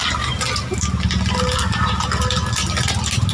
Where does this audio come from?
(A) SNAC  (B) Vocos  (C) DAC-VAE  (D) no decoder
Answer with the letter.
D